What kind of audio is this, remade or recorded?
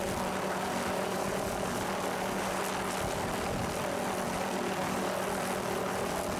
recorded